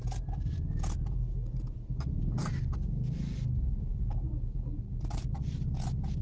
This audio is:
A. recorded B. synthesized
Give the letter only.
A